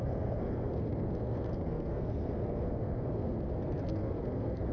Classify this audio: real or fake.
fake